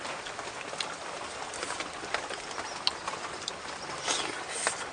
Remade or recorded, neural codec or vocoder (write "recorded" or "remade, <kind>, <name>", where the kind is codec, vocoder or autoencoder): recorded